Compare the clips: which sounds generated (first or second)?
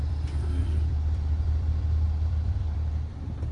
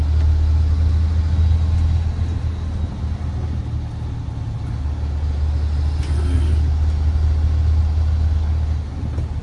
first